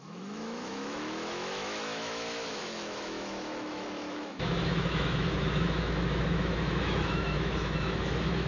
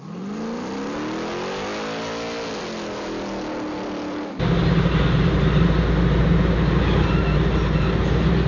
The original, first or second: second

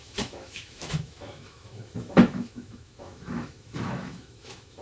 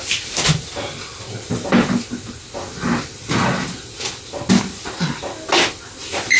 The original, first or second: second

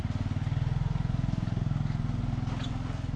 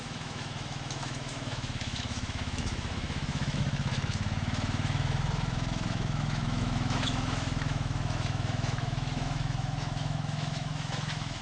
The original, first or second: first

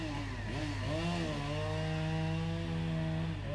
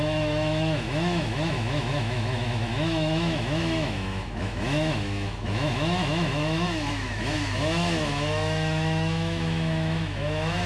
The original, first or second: first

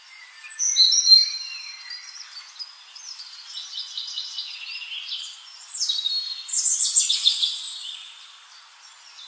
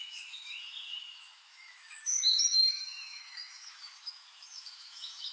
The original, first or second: first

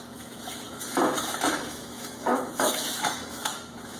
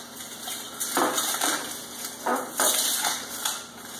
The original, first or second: second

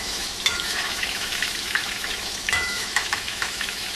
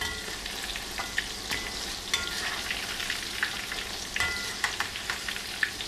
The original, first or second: second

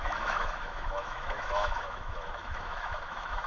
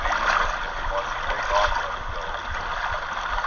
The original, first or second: second